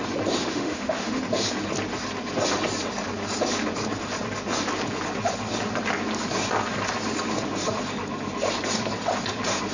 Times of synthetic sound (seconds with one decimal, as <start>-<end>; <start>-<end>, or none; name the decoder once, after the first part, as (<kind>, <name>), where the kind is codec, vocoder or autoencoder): 0.4-1.2 (autoencoder, DAC-VAE)